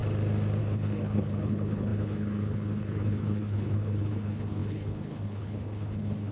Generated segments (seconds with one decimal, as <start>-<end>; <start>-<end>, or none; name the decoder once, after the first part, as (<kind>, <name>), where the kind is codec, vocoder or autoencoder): 0.6-6.3 (codec, HILCodec)